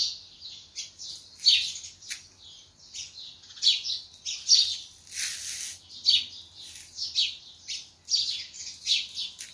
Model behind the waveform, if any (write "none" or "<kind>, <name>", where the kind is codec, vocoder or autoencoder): none